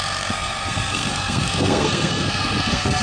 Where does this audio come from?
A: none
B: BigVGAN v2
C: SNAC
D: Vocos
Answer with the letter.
C